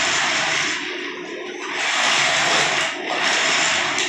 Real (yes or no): yes